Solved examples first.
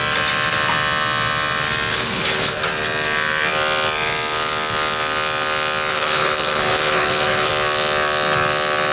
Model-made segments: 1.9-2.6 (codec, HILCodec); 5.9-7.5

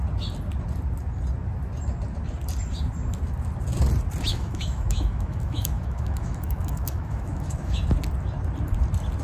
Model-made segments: 4.3-7.8 (autoencoder, DAC-VAE)

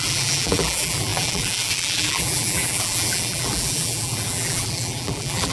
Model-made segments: 0.0-5.5 (vocoder, BigVGAN v2)